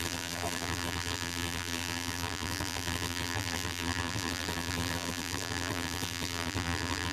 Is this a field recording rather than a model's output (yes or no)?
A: no